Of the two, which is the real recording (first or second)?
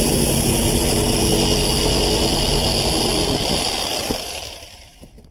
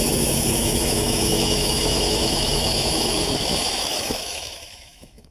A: first